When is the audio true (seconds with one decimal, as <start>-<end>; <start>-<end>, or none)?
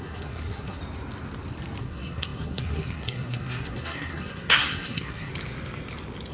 0.8-1.8; 5.3-6.3